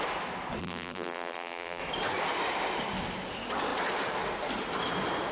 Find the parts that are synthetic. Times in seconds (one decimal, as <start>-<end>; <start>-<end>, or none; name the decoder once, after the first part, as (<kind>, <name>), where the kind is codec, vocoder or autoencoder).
0.6-1.8 (vocoder, BigVGAN v2)